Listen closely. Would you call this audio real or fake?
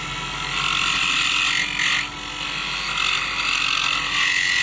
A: real